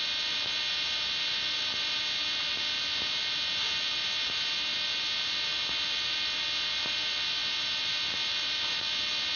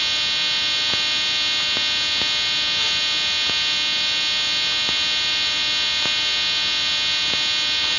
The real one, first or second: second